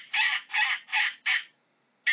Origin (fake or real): real